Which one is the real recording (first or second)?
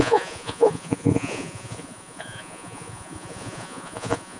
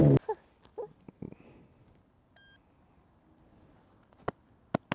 second